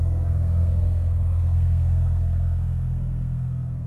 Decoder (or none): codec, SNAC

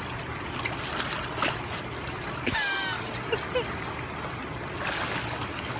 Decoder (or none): none